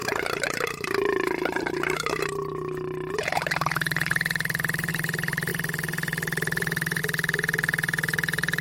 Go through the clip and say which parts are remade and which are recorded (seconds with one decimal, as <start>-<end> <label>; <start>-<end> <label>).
0.0-8.6 remade